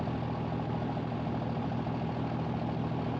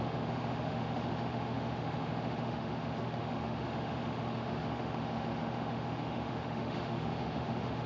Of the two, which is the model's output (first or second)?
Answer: second